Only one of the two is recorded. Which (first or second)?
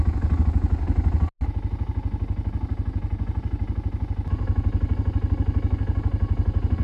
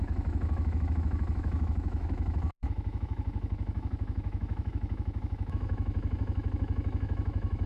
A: first